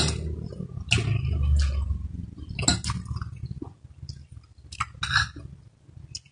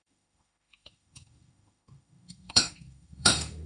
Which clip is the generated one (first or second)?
second